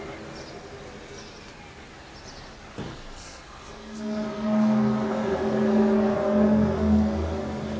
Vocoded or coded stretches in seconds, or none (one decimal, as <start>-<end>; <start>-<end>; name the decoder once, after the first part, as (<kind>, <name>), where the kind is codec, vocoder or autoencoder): 2.9-7.8 (codec, SNAC)